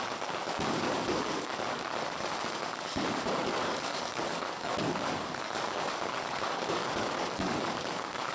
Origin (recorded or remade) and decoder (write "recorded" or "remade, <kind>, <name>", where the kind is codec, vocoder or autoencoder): remade, codec, DAC